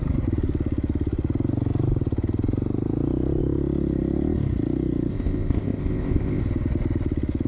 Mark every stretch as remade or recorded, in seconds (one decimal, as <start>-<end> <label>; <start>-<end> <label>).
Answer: 0.0-5.1 recorded; 5.1-6.4 remade; 6.4-7.5 recorded